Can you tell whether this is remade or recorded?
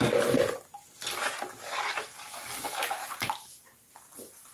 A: recorded